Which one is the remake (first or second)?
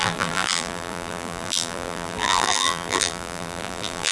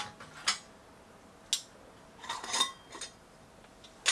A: first